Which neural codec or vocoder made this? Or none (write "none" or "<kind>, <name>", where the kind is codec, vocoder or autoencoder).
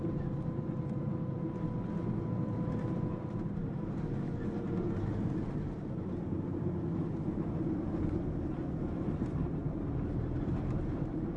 vocoder, BigVGAN v2